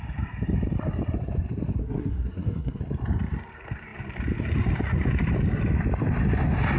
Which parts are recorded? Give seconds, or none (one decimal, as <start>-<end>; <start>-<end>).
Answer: 0.0-1.8; 2.8-6.8